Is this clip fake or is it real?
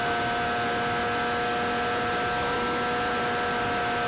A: real